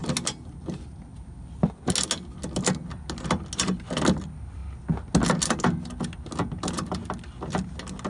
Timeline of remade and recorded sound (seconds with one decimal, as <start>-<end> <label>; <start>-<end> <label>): 0.0-8.1 recorded

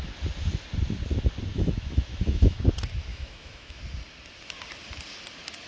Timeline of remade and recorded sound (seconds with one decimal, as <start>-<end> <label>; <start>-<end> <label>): 0.0-1.5 recorded; 1.5-2.6 remade; 2.6-3.1 recorded; 3.1-3.8 remade; 3.8-5.7 recorded